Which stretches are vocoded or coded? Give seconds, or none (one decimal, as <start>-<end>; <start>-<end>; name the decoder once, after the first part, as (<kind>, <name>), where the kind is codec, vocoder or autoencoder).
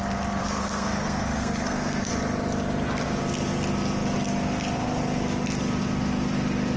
0.4-2.1 (codec, SNAC)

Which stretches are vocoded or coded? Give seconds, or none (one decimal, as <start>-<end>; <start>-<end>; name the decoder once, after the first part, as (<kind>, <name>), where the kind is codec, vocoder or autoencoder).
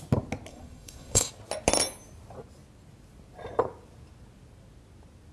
0.5-1.3 (codec, SNAC)